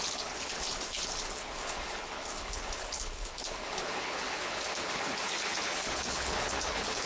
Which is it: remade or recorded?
remade